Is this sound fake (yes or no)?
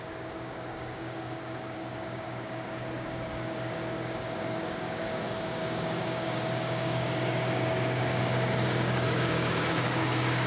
yes